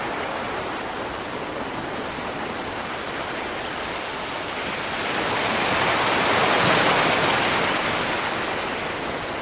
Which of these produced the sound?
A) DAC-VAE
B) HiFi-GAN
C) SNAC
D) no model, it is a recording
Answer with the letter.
D